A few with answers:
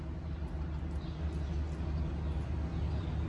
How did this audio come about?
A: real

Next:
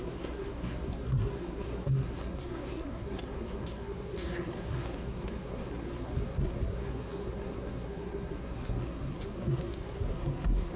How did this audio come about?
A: fake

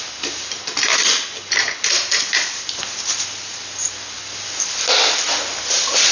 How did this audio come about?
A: real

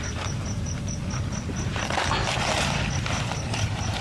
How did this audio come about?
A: real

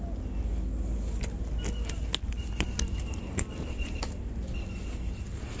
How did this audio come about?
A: real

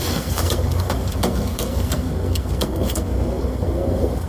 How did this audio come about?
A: fake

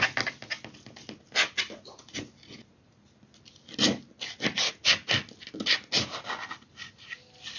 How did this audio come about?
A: real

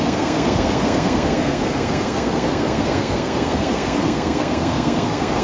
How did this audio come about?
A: fake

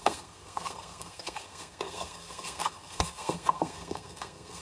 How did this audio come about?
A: fake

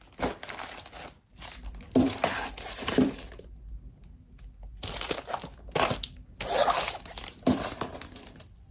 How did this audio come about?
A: real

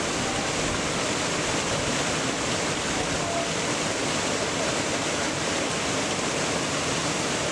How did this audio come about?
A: real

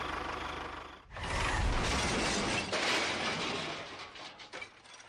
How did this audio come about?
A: real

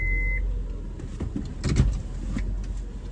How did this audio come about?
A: real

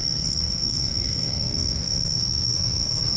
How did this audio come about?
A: fake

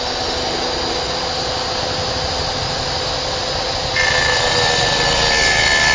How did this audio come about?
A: real